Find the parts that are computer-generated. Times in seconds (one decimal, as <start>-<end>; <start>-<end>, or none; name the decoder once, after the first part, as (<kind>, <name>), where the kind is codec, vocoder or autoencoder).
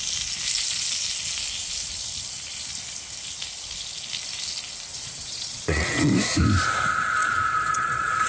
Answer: 4.9-6.1 (vocoder, Vocos); 7.2-8.3